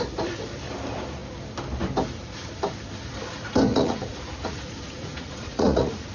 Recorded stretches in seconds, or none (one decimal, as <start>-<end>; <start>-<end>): 0.0-3.7